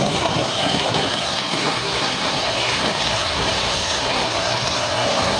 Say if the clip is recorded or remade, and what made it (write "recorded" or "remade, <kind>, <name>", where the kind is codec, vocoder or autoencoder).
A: remade, codec, SNAC